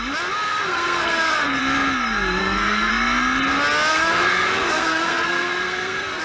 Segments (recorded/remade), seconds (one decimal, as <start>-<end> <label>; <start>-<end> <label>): 0.0-0.5 recorded; 0.5-1.6 remade; 1.6-2.4 recorded; 2.4-2.9 remade; 2.9-3.9 recorded; 3.9-6.2 remade